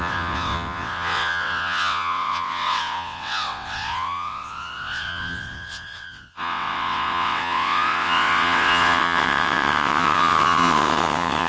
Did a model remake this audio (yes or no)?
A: yes